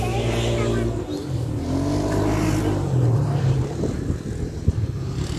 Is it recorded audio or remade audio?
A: recorded